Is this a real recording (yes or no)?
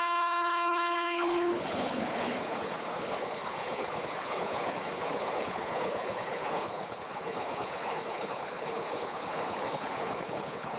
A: no